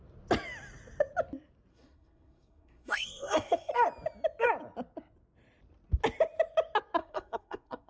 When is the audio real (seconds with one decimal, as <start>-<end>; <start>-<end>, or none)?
0.0-1.7; 3.7-7.0